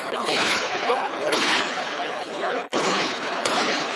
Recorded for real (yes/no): no